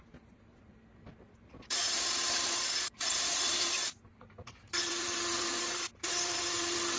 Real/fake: fake